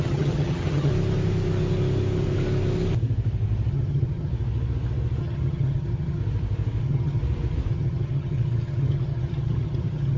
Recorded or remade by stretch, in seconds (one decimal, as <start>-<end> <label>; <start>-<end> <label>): 0.0-0.9 remade; 0.9-3.7 recorded; 3.7-4.3 remade; 4.3-5.2 recorded; 5.2-6.2 remade; 6.2-6.8 recorded; 6.8-7.2 remade; 7.2-7.7 recorded; 7.7-10.2 remade